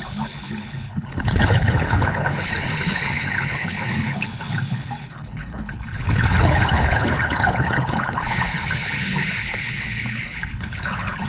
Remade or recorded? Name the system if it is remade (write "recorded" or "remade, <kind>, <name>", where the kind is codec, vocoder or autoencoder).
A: remade, codec, HILCodec